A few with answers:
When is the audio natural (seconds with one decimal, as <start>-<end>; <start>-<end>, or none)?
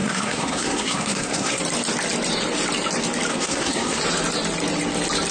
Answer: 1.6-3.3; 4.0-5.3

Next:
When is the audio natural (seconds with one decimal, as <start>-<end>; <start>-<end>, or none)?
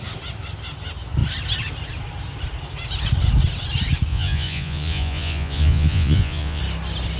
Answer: 0.0-4.1; 6.6-7.2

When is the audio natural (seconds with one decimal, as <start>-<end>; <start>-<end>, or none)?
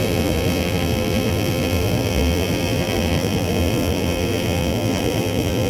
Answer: none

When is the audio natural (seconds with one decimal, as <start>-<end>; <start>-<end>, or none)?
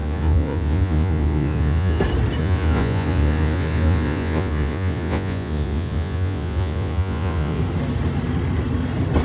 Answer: 2.0-2.4; 7.6-9.2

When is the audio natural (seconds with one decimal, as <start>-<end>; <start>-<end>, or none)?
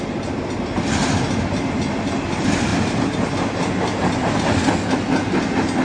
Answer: 0.0-2.7; 3.3-5.8